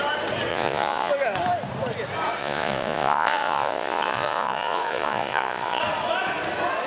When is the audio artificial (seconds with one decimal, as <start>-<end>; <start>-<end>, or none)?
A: 0.5-1.1; 2.4-5.8